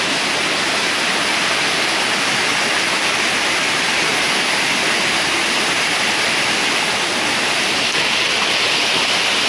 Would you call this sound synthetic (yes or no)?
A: no